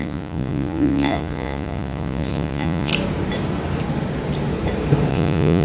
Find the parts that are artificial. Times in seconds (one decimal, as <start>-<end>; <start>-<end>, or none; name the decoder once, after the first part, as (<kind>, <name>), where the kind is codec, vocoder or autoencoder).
0.0-2.9 (vocoder, Vocos); 5.1-5.6